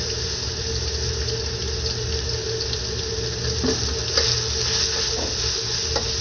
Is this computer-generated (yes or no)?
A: no